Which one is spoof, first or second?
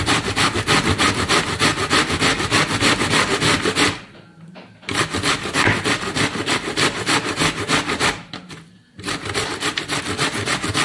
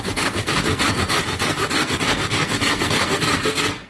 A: second